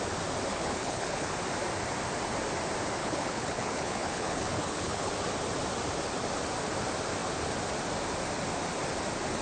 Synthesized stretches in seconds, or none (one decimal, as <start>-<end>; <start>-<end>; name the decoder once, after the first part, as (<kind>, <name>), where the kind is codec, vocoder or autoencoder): 0.5-1.3 (codec, HILCodec); 3.0-5.1